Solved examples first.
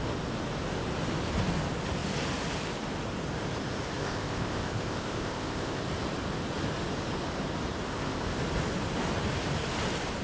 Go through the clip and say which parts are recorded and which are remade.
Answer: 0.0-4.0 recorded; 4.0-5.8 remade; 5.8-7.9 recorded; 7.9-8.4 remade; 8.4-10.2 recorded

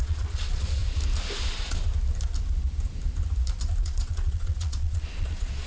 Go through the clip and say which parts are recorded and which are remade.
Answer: 0.0-0.8 remade; 0.8-3.8 recorded; 3.8-5.7 remade

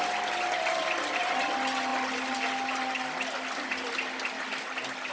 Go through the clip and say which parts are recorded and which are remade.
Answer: 0.0-5.1 recorded

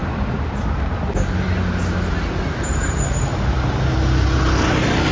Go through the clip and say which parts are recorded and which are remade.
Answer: 0.0-5.1 recorded

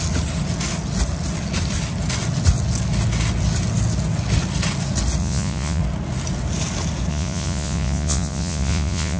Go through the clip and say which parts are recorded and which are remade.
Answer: 0.0-5.2 recorded; 5.2-5.8 remade; 5.8-7.1 recorded; 7.1-9.2 remade